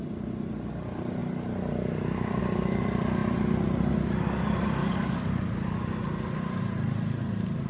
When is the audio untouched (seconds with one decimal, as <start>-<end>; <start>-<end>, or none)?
0.0-4.8; 5.4-7.7